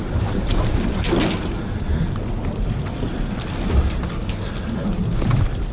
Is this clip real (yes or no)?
yes